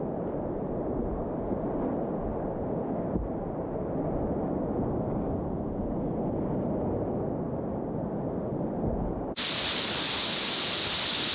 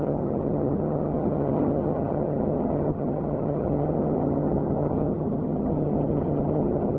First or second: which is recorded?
first